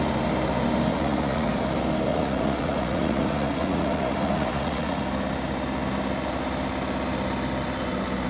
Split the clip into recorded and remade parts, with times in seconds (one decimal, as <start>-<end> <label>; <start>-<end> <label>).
0.0-0.9 recorded; 0.9-1.5 remade; 1.5-2.1 recorded; 2.1-5.0 remade; 5.0-8.3 recorded